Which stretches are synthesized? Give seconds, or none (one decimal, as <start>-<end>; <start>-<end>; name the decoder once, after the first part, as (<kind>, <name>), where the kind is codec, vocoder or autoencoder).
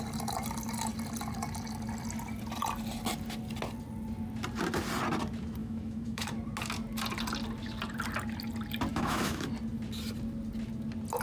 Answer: 5.6-6.3 (autoencoder, DAC-VAE); 8.9-9.5